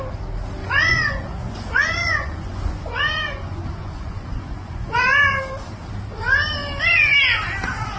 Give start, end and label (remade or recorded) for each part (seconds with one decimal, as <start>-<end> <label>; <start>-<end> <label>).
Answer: 0.0-0.6 recorded; 0.6-5.4 remade; 5.4-8.0 recorded